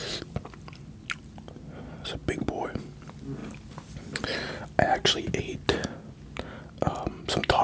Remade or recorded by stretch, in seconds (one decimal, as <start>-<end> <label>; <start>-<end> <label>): 0.0-7.6 recorded